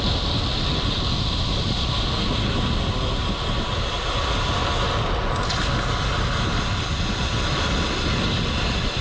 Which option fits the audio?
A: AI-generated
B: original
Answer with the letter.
B